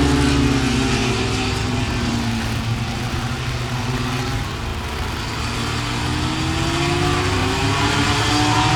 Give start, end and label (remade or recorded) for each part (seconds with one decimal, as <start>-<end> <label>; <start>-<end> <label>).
0.0-1.0 recorded; 1.0-2.1 remade; 2.1-7.4 recorded; 7.4-8.3 remade; 8.3-8.8 recorded